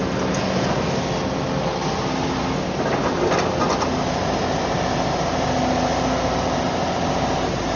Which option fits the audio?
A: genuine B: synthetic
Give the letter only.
A